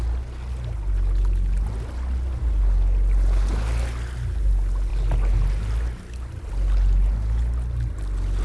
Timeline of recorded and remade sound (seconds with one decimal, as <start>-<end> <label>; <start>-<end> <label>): 0.0-8.4 recorded